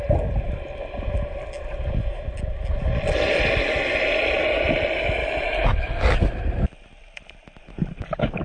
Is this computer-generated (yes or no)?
no